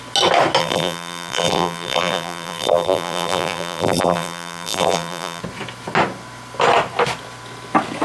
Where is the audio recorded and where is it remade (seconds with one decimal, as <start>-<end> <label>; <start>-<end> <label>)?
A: 0.0-0.6 recorded; 0.6-5.4 remade; 5.4-8.0 recorded

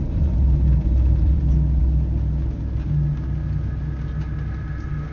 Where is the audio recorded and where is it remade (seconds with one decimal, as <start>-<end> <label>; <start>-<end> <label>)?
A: 0.0-1.4 remade; 1.4-5.1 recorded